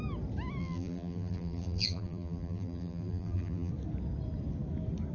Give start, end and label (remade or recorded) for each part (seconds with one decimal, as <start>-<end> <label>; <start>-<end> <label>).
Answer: 0.0-0.6 recorded; 0.6-3.7 remade; 3.7-5.1 recorded